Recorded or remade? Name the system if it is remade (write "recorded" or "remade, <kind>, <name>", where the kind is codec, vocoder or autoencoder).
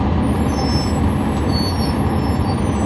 recorded